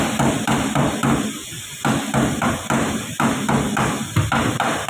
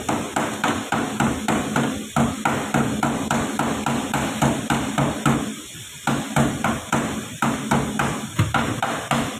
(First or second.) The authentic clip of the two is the second